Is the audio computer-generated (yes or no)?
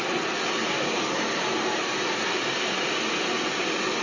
no